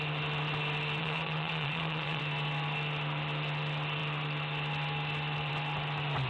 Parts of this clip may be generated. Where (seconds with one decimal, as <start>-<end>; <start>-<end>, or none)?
1.0-2.2